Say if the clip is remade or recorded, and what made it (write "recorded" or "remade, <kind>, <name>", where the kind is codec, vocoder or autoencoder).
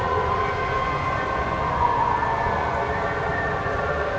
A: remade, vocoder, Vocos